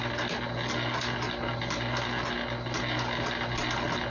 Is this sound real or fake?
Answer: real